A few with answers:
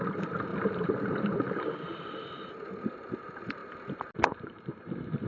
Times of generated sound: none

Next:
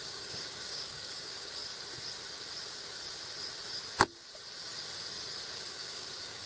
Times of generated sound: 0.0-1.6 (codec, DAC); 5.5-6.5

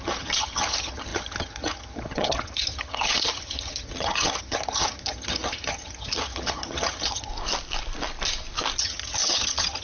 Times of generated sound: 0.0-7.3 (vocoder, HiFi-GAN); 8.8-9.8

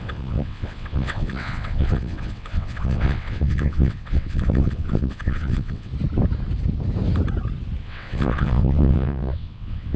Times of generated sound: 0.0-5.9 (vocoder, WaveNeXt); 7.8-10.0

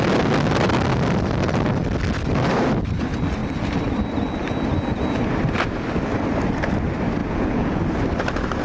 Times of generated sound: 7.2-7.8 (vocoder, Vocos)

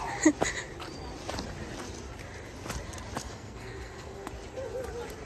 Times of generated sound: 3.2-4.3 (codec, SNAC)